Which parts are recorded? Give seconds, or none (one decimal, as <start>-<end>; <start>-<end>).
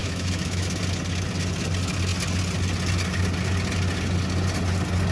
0.8-5.1